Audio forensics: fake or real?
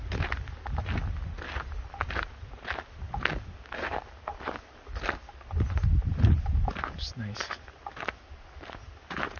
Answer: real